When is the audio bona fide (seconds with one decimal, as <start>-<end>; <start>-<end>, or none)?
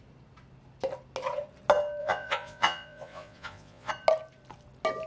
0.0-2.0; 3.9-5.1